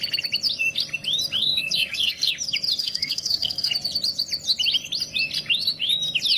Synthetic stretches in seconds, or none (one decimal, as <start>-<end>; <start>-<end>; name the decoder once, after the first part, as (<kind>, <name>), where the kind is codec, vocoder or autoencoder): 1.4-2.3 (codec, SNAC); 2.8-3.7